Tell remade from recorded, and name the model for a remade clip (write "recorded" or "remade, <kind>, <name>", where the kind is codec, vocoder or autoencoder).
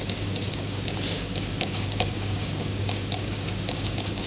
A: remade, codec, DAC